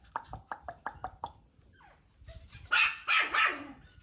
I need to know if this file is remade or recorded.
recorded